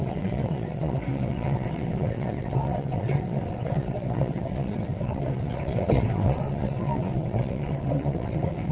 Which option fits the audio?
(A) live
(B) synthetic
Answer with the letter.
B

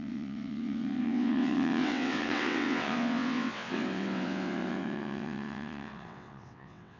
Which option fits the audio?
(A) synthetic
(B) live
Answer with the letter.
A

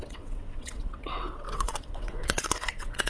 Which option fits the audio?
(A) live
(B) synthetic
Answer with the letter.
B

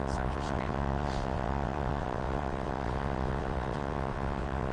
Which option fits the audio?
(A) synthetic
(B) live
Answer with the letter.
A